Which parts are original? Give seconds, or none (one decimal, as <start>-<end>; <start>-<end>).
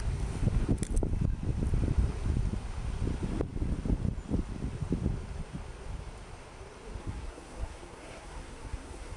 0.0-7.0